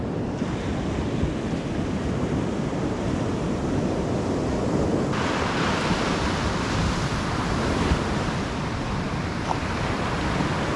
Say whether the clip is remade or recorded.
remade